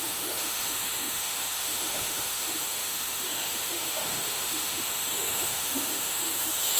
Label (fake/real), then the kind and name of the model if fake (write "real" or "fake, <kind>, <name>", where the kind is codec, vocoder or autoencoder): fake, autoencoder, DAC-VAE